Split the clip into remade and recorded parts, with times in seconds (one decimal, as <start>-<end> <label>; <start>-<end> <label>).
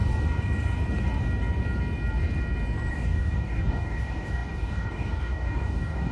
0.0-2.9 recorded; 2.9-6.1 remade